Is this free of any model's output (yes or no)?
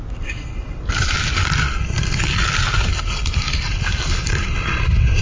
yes